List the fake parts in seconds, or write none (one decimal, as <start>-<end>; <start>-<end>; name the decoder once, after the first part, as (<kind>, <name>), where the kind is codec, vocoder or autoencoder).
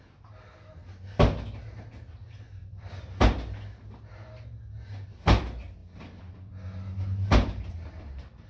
2.6-3.1 (vocoder, BigVGAN v2)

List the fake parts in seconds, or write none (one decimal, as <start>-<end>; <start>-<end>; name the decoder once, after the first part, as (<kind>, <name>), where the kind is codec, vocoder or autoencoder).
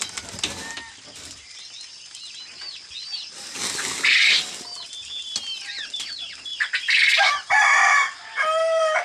none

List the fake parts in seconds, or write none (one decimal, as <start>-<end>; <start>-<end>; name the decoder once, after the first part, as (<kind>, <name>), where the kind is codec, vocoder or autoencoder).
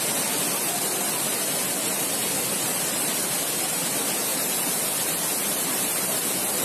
none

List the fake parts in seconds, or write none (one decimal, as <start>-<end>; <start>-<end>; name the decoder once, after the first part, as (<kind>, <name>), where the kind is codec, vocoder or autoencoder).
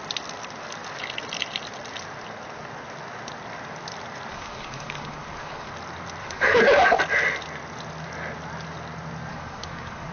4.3-5.7 (codec, DAC); 6.2-7.0; 9.3-10.1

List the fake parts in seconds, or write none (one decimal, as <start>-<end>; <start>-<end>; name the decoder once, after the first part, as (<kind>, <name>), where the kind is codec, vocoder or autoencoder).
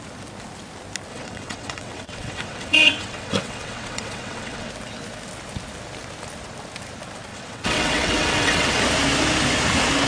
1.1-4.7 (vocoder, WaveNeXt); 7.3-8.8